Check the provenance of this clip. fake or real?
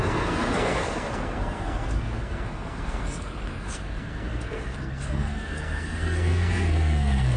fake